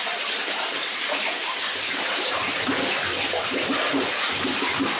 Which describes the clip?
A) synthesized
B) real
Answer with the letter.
A